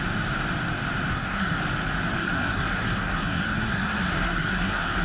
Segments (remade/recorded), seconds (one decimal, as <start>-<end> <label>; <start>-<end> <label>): 0.0-1.1 recorded; 1.1-1.6 remade; 1.6-2.2 recorded; 2.2-5.0 remade